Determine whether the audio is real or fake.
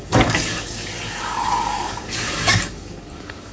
fake